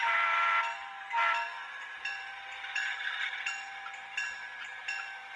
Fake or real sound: fake